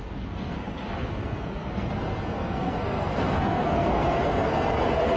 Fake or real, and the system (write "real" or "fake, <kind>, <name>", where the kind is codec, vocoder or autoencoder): fake, codec, SNAC